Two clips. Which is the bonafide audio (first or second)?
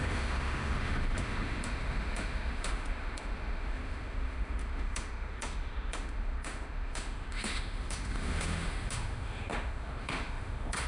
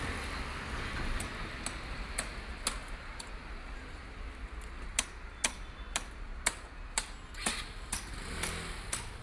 second